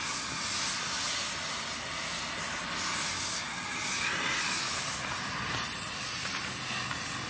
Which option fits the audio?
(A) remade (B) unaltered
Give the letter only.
B